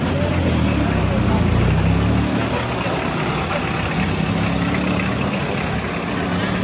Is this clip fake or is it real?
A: real